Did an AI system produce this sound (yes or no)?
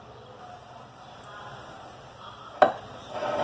no